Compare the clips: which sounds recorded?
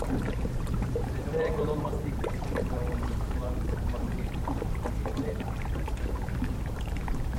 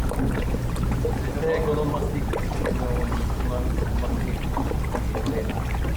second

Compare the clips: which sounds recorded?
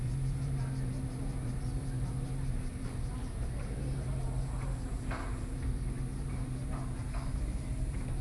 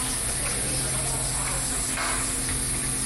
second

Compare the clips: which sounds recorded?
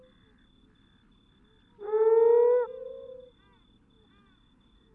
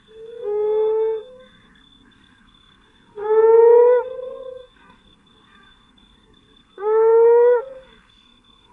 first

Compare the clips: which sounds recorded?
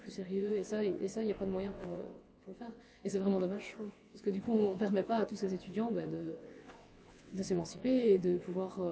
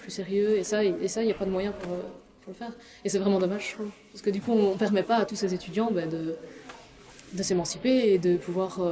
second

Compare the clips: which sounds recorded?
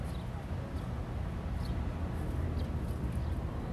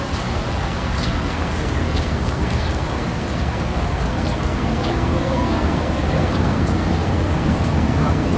first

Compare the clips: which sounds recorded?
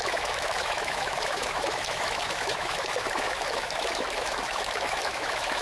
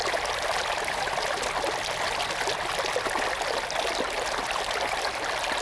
second